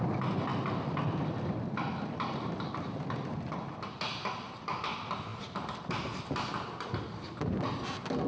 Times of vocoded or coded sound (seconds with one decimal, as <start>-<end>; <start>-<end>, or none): none